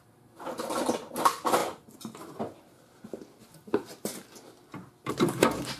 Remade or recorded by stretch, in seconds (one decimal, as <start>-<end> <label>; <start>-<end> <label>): 0.0-5.8 recorded